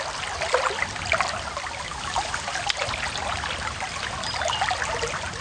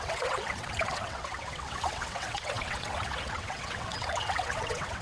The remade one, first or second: second